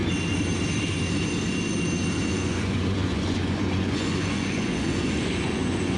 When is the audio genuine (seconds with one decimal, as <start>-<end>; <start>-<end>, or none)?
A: 0.0-2.3